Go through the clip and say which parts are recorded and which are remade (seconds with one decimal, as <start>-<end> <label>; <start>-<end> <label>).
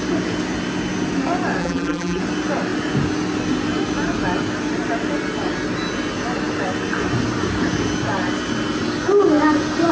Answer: 0.0-1.6 recorded; 1.6-2.2 remade; 2.2-9.9 recorded